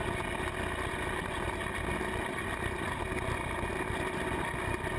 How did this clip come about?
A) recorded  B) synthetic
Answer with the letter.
A